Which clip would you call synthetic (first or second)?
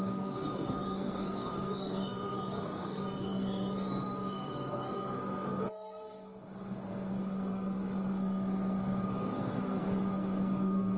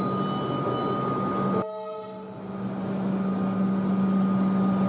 first